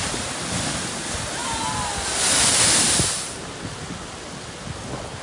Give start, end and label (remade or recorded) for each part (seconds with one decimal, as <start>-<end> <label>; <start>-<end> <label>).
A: 0.0-5.2 recorded